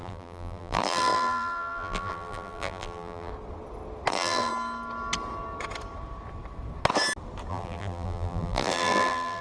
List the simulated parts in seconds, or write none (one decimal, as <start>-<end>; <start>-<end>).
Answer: 0.0-3.3; 4.1-4.5; 7.5-9.4